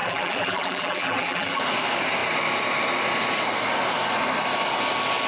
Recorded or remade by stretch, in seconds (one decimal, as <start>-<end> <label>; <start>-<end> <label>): 0.0-1.6 remade; 1.6-5.3 recorded